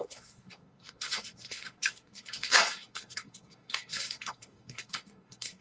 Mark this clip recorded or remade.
remade